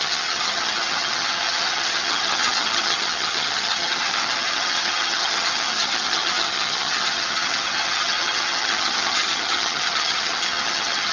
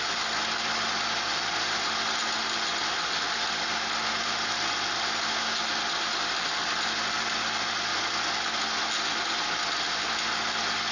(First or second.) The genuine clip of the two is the second